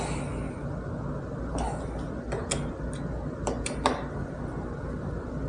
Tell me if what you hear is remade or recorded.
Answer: recorded